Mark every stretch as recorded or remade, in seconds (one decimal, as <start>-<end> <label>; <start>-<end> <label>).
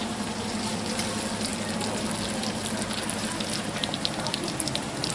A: 0.0-5.1 recorded